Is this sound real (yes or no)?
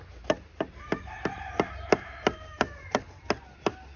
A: yes